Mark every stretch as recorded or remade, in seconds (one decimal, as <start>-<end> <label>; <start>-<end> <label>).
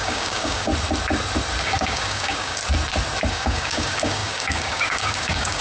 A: 0.0-0.7 remade; 0.7-1.6 recorded; 1.6-2.6 remade; 2.6-3.3 recorded; 3.3-5.6 remade